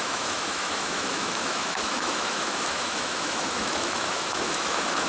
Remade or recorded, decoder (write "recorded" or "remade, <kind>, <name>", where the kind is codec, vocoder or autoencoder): remade, autoencoder, DAC-VAE